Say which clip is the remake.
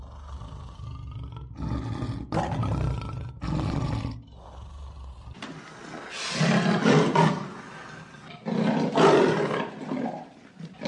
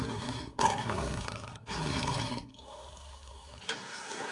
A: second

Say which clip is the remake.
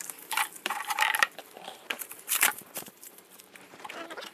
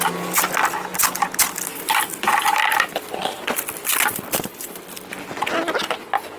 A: first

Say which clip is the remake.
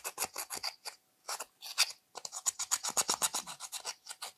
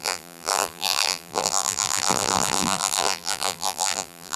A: second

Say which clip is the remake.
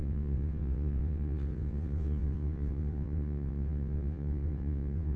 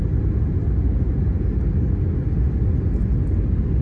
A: first